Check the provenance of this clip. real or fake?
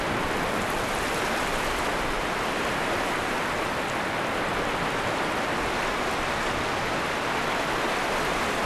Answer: real